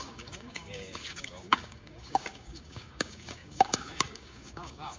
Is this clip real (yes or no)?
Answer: no